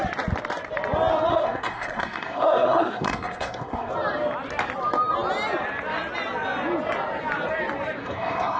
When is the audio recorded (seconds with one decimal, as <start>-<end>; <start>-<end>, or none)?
0.0-1.3; 3.9-8.0